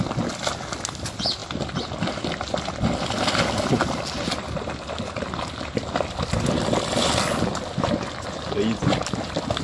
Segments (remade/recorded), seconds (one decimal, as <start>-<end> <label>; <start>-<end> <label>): 0.0-9.6 recorded